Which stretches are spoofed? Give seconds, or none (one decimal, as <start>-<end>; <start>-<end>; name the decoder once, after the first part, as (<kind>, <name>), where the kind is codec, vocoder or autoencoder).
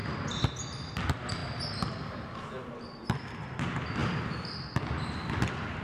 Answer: none